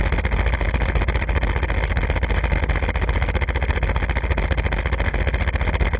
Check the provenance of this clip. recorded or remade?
recorded